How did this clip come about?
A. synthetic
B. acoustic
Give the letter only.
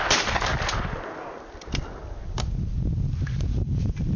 B